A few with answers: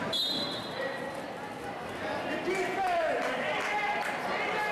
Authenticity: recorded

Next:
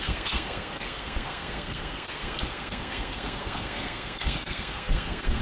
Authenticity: remade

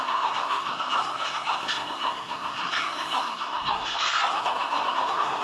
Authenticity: remade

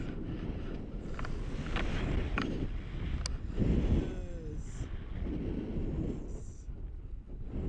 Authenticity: recorded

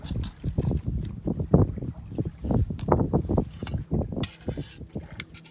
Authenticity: recorded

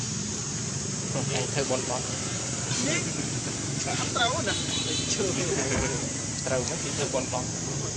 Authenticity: remade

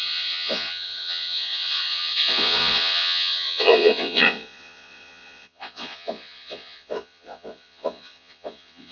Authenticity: remade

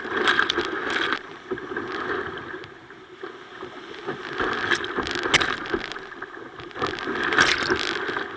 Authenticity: recorded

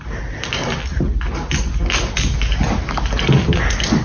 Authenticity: recorded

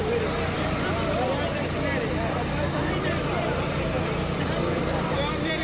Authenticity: recorded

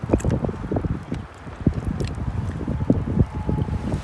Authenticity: recorded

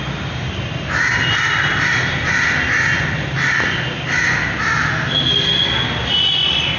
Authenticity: recorded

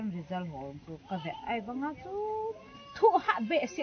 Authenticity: recorded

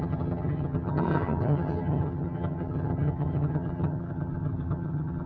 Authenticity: remade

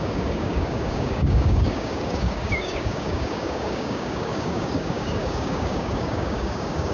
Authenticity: remade